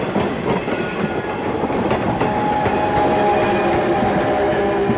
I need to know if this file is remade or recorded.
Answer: recorded